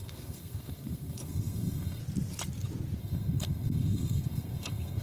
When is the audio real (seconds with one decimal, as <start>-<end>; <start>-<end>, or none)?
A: 2.0-3.0